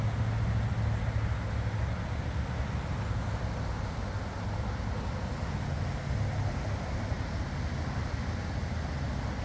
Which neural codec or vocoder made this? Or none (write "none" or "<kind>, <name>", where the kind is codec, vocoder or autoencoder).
none